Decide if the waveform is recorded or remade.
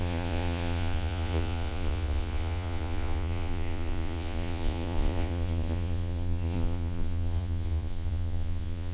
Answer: remade